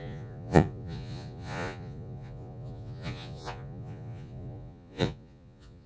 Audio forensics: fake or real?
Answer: fake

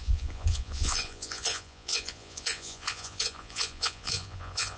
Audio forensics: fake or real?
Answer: fake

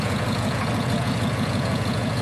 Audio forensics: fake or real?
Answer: fake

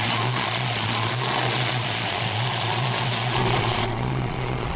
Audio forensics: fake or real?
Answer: fake